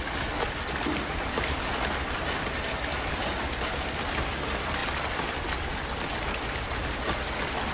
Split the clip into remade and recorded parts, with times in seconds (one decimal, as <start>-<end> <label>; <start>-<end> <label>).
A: 0.0-7.7 recorded